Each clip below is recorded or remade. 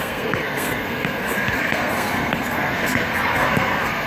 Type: remade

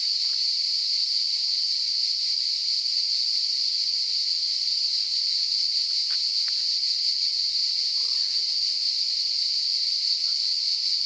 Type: recorded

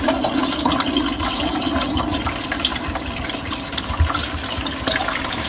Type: recorded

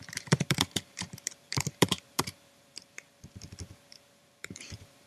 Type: remade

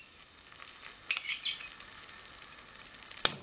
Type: recorded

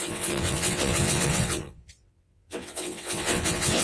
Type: remade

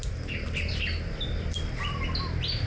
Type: recorded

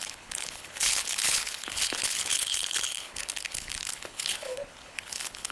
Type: remade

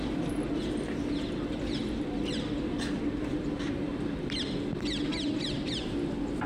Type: recorded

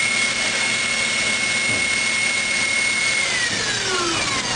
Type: recorded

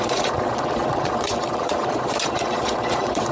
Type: remade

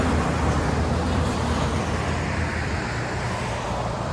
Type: remade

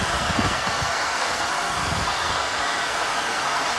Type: remade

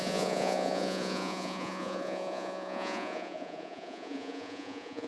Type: remade